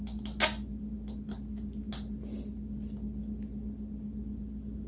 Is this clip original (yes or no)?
yes